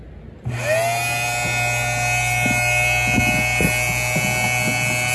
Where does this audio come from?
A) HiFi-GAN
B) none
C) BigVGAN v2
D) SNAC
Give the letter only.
B